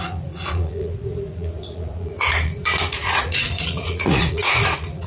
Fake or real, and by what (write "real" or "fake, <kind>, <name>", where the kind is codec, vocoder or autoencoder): fake, vocoder, Vocos